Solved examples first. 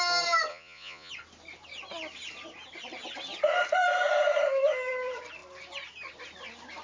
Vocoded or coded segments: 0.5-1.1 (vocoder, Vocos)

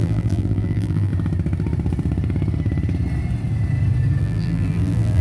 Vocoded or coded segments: 0.0-1.1 (vocoder, BigVGAN v2); 4.2-5.2

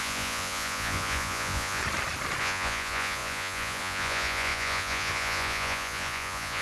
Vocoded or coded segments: 0.0-1.8 (vocoder, Vocos); 2.4-6.6